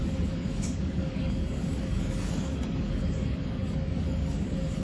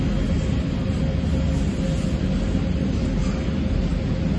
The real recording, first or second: second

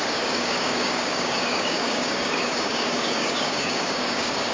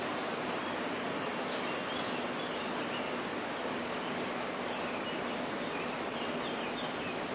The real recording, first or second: second